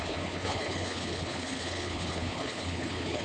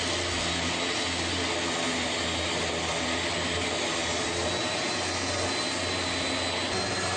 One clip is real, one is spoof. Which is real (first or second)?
second